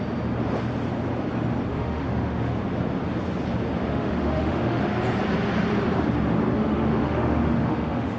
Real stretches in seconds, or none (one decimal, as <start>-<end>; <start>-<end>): 0.0-1.7; 2.5-3.9; 4.8-6.5